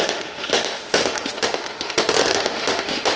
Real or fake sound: fake